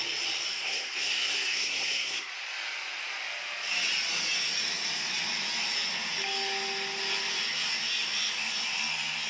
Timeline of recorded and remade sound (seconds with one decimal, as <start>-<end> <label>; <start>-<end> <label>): 0.0-0.5 recorded; 0.5-2.3 remade; 2.3-9.3 recorded